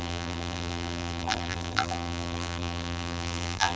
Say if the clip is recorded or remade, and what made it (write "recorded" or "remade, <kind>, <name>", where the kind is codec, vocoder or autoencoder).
remade, vocoder, BigVGAN v2